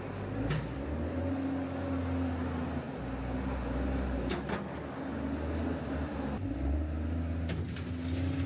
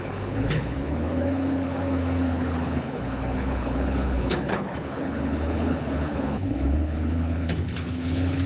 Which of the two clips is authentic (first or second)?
first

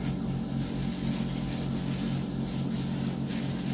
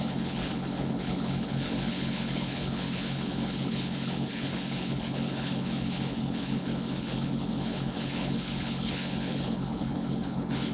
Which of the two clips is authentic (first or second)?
first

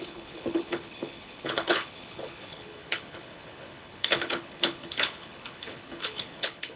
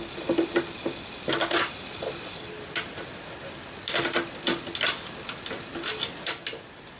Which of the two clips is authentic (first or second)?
second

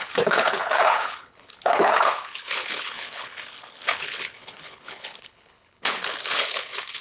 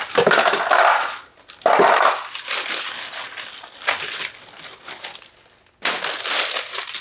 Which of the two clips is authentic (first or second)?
second